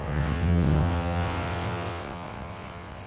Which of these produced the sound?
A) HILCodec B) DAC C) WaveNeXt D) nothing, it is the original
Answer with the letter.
C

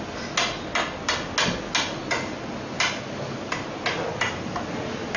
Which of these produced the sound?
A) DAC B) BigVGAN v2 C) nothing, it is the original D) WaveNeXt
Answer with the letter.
C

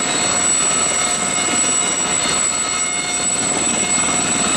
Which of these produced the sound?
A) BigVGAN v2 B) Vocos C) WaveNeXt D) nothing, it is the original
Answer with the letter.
D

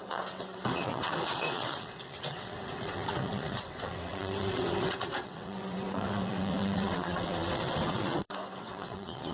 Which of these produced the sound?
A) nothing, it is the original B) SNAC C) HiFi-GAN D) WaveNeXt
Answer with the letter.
D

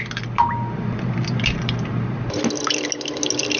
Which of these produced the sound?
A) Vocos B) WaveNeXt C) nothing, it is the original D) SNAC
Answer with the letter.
C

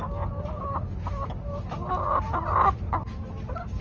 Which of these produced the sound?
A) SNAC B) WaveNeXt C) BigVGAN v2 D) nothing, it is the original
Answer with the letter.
D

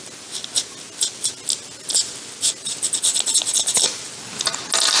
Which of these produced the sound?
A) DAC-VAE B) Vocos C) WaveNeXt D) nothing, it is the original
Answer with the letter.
D